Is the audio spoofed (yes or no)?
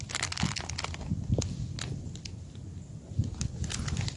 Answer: no